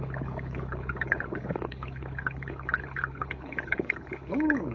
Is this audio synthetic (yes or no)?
yes